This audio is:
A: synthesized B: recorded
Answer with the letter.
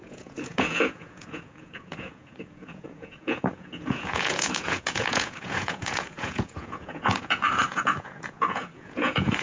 A